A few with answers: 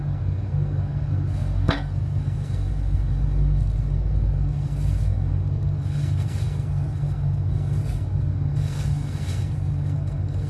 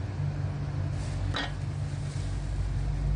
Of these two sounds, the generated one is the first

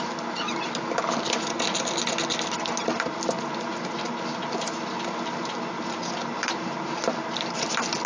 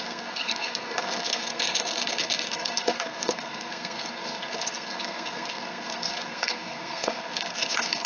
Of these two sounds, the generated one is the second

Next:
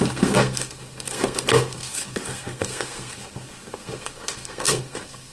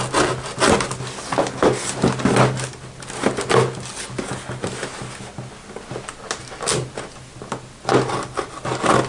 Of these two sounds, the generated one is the first